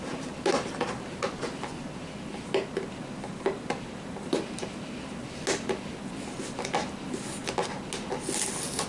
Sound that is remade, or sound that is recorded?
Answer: recorded